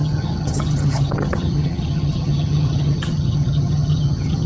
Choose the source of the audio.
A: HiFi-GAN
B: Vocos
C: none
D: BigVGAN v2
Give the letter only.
A